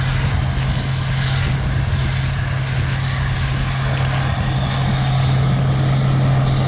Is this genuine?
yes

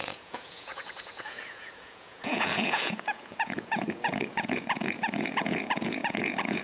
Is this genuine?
no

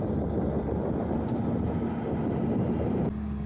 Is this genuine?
yes